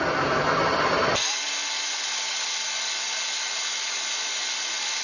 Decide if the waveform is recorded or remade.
recorded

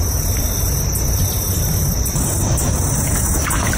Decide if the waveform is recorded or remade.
recorded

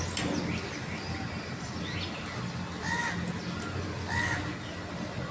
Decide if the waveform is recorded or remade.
recorded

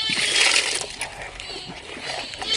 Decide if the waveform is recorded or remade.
recorded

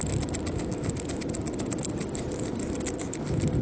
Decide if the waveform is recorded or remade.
recorded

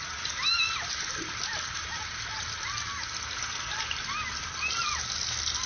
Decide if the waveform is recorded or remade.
recorded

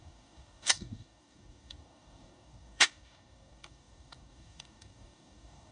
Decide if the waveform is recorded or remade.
remade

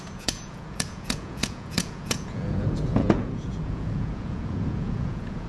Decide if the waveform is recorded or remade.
remade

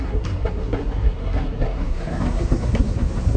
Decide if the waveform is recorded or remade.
remade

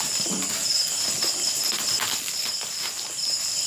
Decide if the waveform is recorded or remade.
recorded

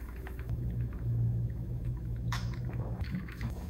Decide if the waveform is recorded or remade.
remade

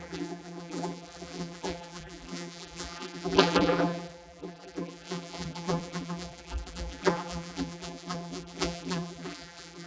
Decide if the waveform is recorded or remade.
remade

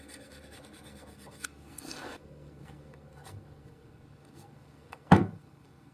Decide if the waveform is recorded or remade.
remade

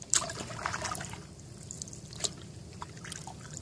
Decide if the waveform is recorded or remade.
remade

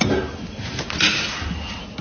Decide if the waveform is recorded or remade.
recorded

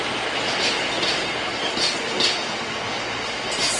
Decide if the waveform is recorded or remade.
recorded